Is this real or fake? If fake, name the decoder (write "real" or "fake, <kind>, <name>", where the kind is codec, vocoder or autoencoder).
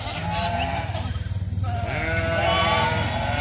real